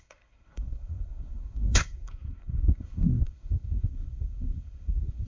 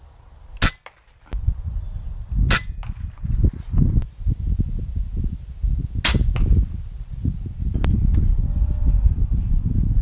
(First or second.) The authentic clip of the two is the second